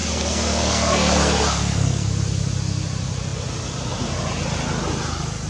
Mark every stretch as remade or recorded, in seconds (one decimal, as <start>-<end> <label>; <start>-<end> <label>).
0.0-2.1 remade; 2.1-5.5 recorded